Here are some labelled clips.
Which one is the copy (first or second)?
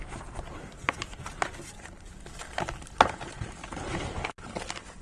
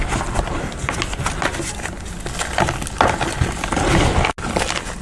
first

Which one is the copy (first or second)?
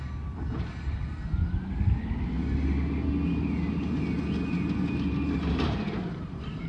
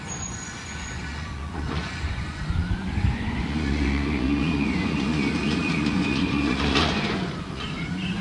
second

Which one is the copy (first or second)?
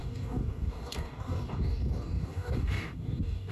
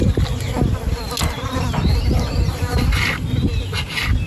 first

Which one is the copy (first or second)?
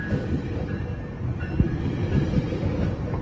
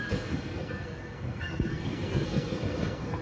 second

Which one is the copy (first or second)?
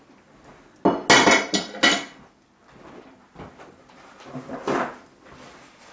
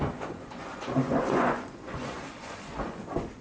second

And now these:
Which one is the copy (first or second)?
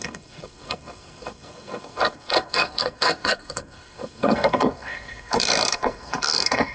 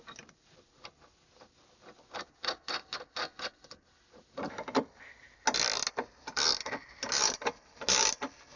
first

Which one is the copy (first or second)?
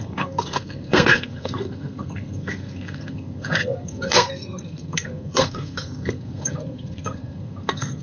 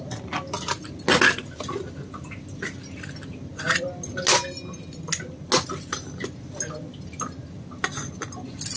first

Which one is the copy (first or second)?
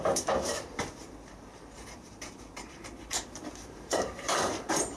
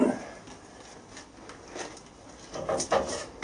first